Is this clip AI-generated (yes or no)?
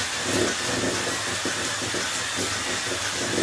no